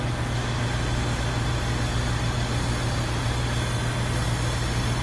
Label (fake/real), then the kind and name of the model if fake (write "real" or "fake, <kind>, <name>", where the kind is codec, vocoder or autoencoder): real